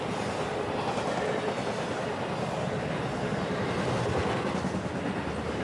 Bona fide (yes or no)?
yes